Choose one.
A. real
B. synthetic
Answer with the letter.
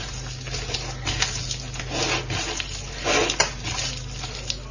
A